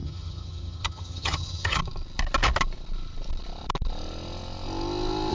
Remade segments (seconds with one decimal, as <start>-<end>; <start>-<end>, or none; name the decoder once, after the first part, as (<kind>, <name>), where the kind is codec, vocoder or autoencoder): 0.0-1.8 (vocoder, HiFi-GAN)